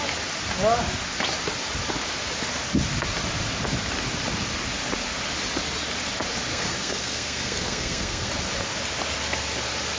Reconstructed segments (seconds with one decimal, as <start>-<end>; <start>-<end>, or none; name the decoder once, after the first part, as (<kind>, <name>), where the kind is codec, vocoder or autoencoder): 6.5-8.3 (codec, SNAC)